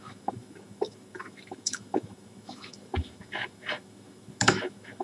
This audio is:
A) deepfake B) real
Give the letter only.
A